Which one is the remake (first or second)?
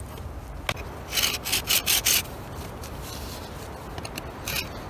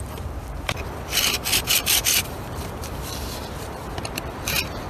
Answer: second